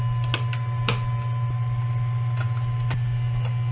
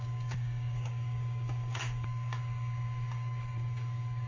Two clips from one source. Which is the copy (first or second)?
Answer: second